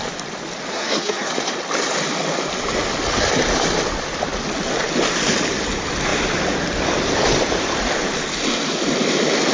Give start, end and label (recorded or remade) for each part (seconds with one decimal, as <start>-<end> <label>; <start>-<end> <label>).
0.0-0.7 recorded; 0.7-1.3 remade; 1.3-9.5 recorded